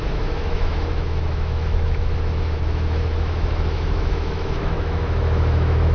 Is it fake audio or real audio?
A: fake